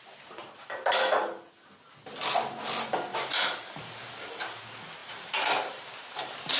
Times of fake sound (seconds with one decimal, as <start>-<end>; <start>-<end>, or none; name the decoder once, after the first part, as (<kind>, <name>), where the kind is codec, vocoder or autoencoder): 3.1-4.6 (vocoder, BigVGAN v2); 5.0-6.6

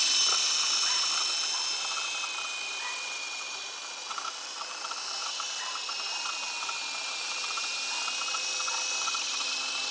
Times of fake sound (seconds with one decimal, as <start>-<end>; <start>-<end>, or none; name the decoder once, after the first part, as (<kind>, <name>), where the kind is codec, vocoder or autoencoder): 5.2-6.8 (vocoder, BigVGAN v2)

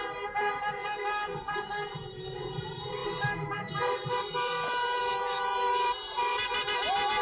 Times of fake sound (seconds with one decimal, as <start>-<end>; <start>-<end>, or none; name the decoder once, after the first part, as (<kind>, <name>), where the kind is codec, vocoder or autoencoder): 0.0-0.8 (vocoder, BigVGAN v2); 1.4-6.3

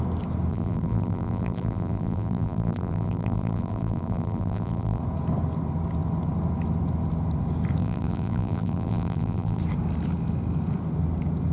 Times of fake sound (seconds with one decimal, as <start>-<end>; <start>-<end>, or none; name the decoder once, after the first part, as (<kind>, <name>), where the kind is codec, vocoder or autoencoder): 0.5-5.0 (vocoder, BigVGAN v2); 7.8-9.6